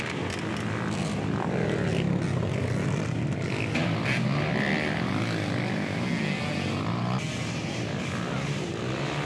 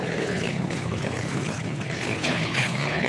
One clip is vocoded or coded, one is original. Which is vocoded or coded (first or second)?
second